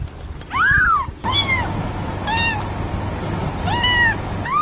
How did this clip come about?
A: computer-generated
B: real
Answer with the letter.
B